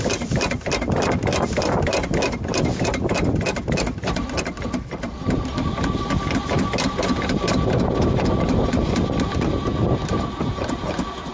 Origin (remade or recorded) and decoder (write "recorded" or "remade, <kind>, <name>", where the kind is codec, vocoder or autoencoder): recorded